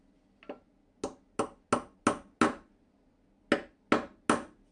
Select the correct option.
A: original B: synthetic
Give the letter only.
A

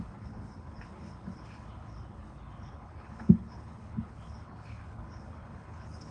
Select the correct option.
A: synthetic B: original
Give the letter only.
A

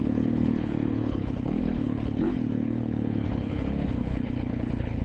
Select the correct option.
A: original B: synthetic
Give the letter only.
B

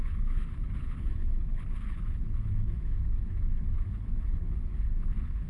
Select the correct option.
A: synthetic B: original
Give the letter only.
A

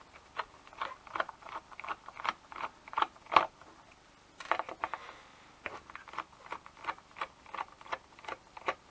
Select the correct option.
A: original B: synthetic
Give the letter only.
A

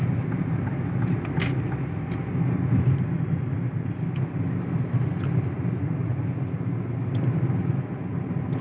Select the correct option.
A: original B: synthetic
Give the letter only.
A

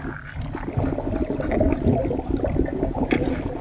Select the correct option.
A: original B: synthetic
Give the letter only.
A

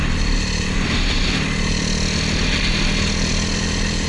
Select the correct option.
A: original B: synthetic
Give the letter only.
A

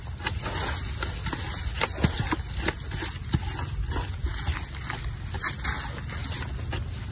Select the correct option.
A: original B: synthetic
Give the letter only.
A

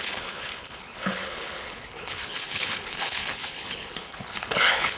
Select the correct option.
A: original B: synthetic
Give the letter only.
B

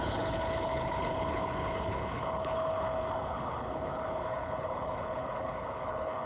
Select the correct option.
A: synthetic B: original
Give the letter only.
A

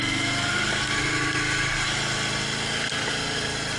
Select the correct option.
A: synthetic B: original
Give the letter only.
B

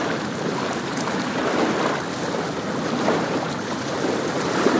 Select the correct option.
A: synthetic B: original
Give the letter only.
B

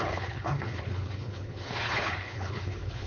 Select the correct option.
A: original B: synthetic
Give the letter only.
B